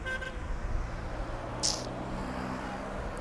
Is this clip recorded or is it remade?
recorded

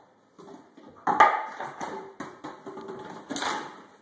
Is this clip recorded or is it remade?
recorded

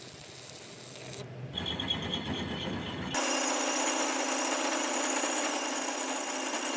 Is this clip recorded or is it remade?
recorded